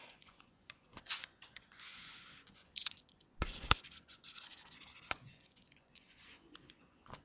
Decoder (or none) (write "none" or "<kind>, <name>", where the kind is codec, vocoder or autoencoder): vocoder, Vocos